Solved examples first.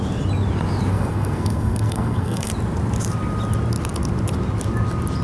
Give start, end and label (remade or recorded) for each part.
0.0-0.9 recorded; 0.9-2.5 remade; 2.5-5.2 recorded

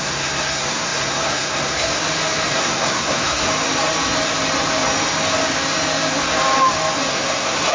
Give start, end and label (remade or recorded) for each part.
0.0-2.0 remade; 2.0-2.5 recorded; 2.5-3.5 remade; 3.5-7.1 recorded; 7.1-7.7 remade

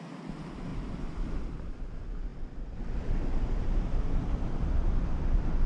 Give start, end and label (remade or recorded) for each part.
0.0-5.7 recorded

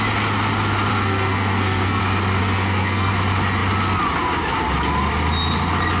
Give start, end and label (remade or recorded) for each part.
0.0-0.9 recorded; 0.9-2.0 remade; 2.0-2.4 recorded; 2.4-3.1 remade; 3.1-6.0 recorded